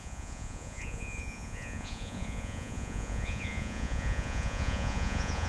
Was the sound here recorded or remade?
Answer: remade